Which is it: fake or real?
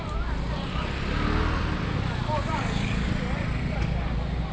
real